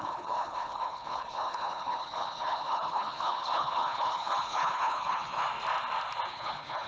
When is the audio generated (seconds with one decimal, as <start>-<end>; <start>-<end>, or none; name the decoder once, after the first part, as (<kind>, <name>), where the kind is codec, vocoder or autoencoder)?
0.0-5.4 (codec, HILCodec); 6.3-6.9